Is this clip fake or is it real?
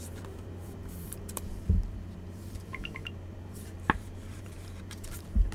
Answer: fake